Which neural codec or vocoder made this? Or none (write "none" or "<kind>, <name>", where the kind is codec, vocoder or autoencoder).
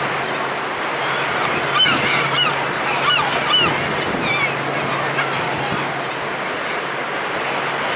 none